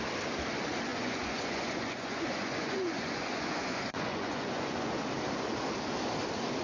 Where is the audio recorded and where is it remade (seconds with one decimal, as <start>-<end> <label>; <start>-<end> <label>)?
0.0-0.9 recorded; 0.9-4.9 remade; 4.9-6.6 recorded